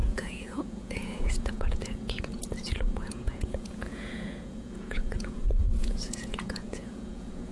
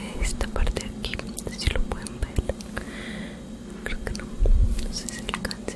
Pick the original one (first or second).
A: second